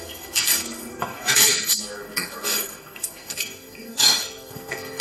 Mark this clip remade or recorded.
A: remade